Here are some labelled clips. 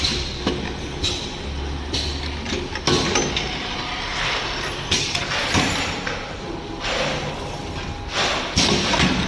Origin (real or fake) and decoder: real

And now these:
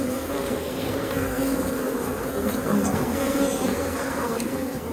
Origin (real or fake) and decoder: fake, codec, SNAC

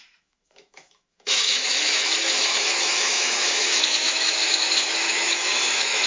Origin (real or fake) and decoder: fake, autoencoder, DAC-VAE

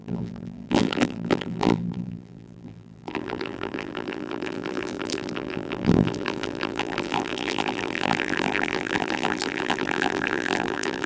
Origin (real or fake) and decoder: fake, vocoder, BigVGAN v2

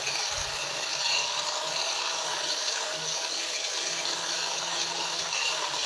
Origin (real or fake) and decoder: fake, codec, DAC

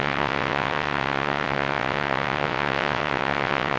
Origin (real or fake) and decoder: fake, vocoder, WaveNeXt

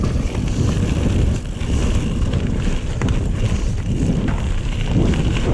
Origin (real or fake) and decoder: real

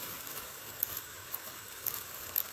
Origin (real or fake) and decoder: fake, codec, DAC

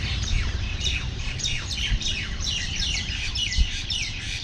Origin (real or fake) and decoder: fake, vocoder, BigVGAN v2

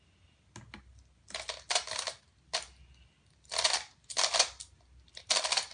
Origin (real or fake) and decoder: real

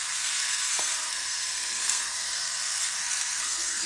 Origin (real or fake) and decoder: fake, codec, SNAC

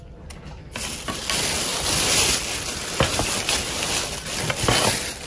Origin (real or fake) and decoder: real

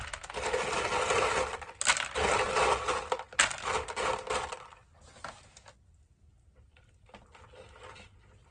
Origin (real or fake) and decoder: real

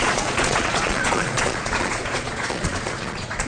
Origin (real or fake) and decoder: fake, vocoder, Vocos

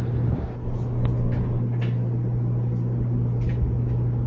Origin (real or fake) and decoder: real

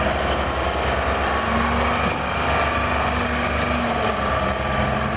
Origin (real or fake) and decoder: real